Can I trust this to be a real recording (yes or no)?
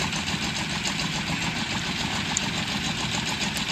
yes